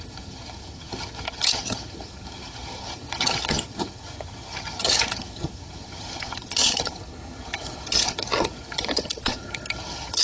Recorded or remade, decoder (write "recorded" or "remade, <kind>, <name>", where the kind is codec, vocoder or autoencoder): remade, vocoder, HiFi-GAN